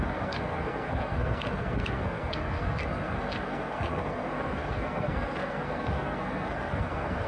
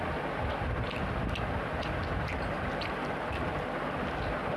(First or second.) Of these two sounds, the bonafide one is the second